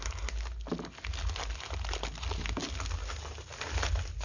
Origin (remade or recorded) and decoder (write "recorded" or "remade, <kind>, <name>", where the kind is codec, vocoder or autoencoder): recorded